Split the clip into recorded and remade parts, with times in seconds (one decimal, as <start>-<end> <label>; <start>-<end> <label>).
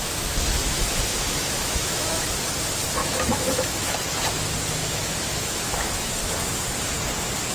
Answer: 0.0-1.1 recorded; 1.1-2.3 remade; 2.3-3.0 recorded; 3.0-4.0 remade; 4.0-4.8 recorded; 4.8-6.2 remade; 6.2-7.5 recorded